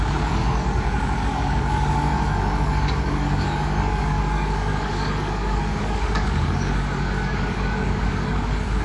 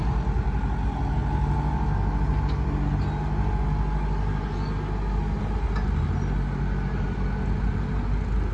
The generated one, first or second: first